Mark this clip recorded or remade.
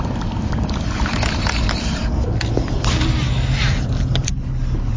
recorded